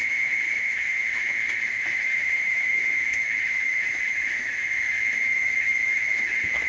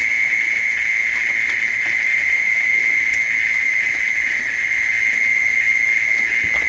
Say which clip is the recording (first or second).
second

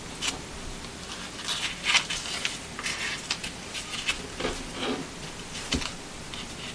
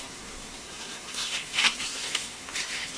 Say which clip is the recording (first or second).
first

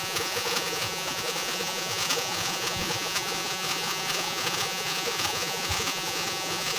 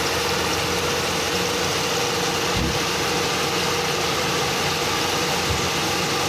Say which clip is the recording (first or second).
second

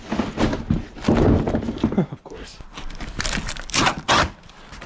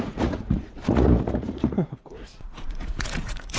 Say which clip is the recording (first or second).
first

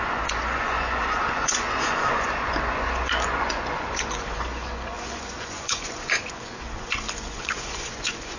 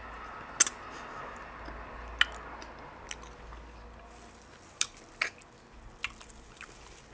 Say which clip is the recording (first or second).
second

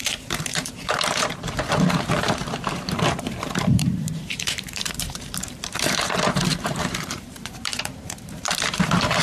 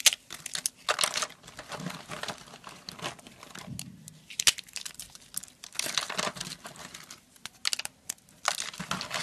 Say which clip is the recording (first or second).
second